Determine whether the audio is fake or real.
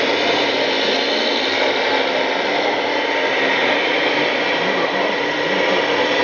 real